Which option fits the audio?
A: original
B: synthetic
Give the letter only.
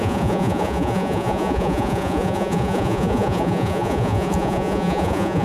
B